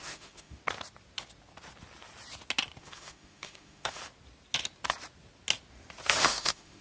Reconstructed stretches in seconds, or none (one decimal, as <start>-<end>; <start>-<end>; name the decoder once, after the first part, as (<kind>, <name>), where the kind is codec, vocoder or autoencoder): 0.0-0.6 (autoencoder, DAC-VAE); 2.8-4.0; 6.2-6.8